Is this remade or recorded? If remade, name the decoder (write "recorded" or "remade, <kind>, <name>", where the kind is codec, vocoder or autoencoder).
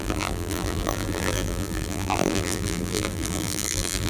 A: remade, vocoder, BigVGAN v2